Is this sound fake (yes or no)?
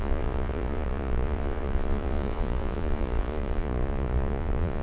yes